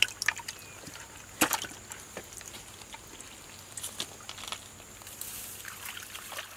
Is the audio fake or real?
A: real